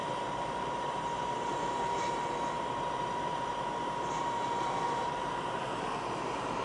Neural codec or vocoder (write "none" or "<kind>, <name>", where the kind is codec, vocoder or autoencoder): vocoder, BigVGAN v2